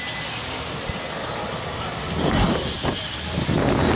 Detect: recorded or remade recorded